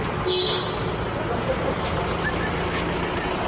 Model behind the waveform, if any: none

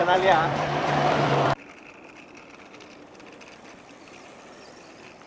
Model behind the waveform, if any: vocoder, BigVGAN v2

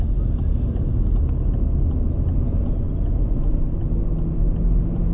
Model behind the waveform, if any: none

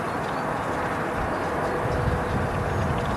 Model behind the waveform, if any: none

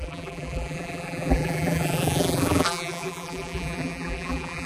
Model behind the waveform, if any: vocoder, BigVGAN v2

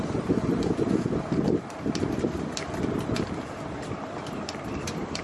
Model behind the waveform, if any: vocoder, BigVGAN v2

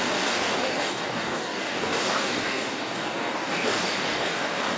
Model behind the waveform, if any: codec, DAC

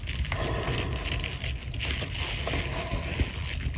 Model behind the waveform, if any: none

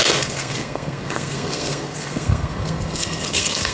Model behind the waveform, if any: codec, SNAC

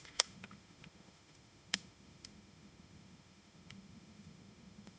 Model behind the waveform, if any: autoencoder, DAC-VAE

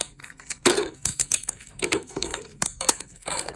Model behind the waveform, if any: codec, SNAC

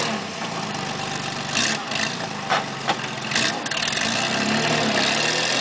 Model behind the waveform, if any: none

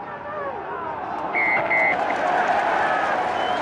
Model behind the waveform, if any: none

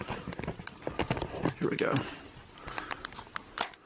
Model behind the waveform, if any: none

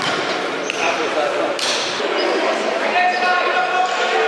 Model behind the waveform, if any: none